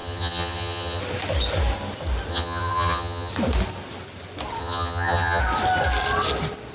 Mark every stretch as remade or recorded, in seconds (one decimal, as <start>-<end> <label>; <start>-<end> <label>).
0.0-1.0 remade; 1.0-2.3 recorded; 2.3-3.3 remade; 3.3-4.6 recorded; 4.6-5.4 remade; 5.4-6.7 recorded

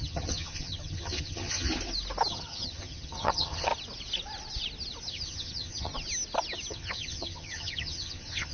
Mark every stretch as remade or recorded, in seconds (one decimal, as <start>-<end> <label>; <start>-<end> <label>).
0.0-1.7 remade; 1.7-2.3 recorded; 2.3-3.7 remade; 3.7-5.1 recorded; 5.1-5.9 remade; 5.9-6.7 recorded; 6.7-8.5 remade